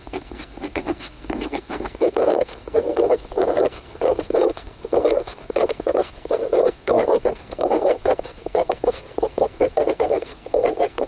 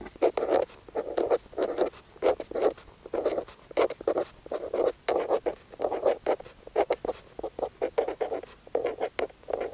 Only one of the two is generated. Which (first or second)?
first